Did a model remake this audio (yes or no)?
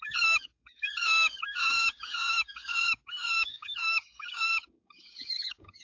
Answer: yes